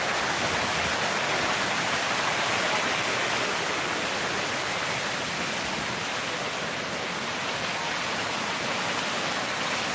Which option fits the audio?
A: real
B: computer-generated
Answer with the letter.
A